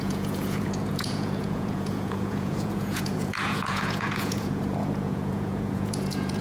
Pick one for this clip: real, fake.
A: fake